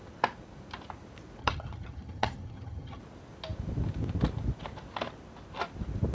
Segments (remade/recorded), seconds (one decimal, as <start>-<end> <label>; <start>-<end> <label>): 0.0-1.4 recorded; 1.4-3.0 remade; 3.0-6.1 recorded